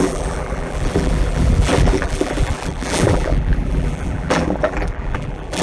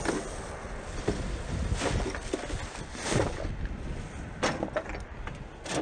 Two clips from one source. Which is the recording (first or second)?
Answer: second